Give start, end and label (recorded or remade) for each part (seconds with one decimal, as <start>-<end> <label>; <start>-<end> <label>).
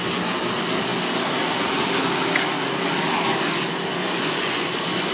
0.0-4.0 recorded; 4.0-5.1 remade